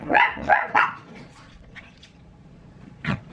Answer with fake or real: fake